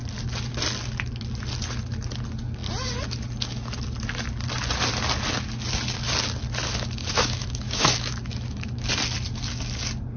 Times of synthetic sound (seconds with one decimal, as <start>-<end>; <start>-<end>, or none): 7.0-8.9